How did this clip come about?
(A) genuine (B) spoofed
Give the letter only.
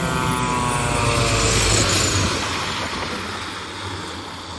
A